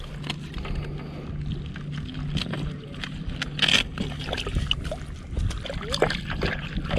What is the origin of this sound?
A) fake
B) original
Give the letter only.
B